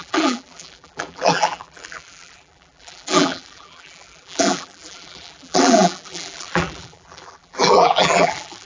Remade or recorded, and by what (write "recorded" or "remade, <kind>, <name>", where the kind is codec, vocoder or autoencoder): remade, vocoder, BigVGAN v2